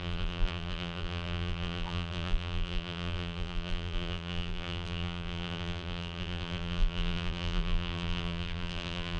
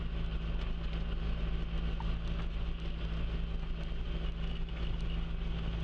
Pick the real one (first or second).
second